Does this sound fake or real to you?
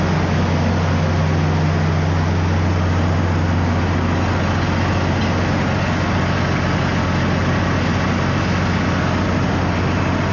real